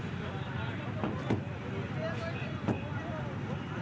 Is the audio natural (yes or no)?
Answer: yes